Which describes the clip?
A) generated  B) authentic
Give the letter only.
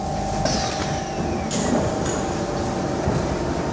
B